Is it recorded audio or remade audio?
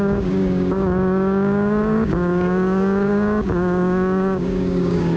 remade